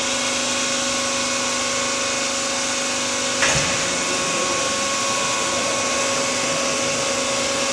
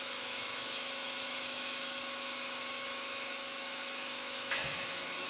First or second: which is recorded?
first